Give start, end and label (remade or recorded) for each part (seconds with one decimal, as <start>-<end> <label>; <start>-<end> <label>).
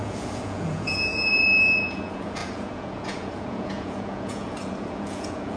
0.0-5.6 remade